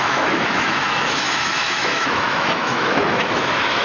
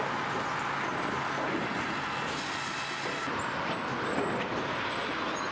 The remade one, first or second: first